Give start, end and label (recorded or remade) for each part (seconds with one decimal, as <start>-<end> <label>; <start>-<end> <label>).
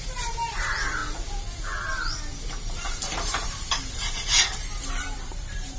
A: 0.0-1.0 remade; 1.0-2.7 recorded; 2.7-5.8 remade